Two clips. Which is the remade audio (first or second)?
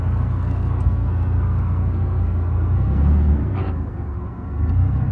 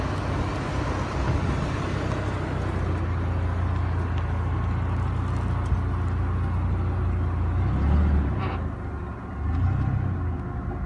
first